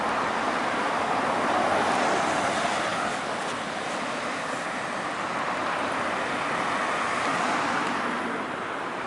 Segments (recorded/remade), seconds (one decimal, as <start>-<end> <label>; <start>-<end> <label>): 0.0-2.9 recorded; 2.9-3.5 remade; 3.5-9.1 recorded